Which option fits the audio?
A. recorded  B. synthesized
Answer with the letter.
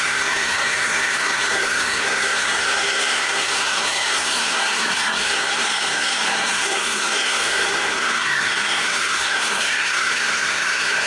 B